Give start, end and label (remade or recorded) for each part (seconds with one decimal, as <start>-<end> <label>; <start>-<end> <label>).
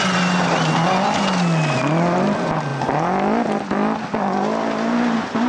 0.0-5.5 recorded